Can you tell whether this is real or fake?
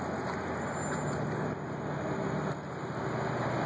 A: real